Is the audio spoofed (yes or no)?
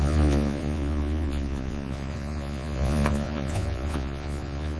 yes